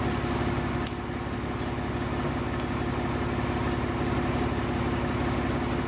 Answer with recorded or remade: recorded